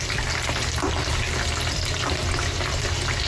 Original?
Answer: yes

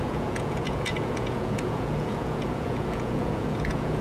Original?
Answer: no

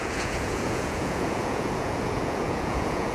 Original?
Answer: no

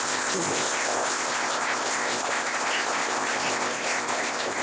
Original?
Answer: no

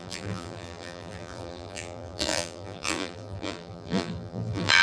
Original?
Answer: no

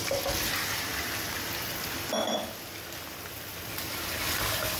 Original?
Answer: yes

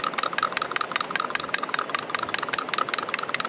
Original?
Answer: yes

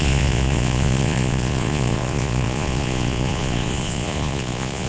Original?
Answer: no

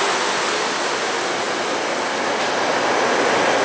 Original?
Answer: yes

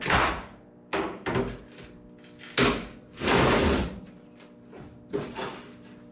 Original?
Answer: yes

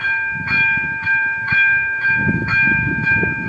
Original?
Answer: no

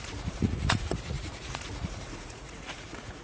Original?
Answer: no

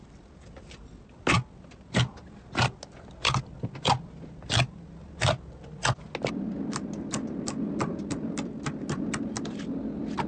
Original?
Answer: yes